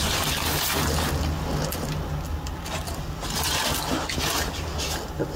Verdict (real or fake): real